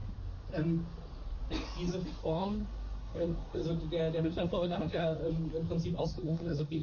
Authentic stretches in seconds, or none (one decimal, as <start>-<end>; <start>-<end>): 0.0-2.2; 3.6-4.2; 5.2-6.0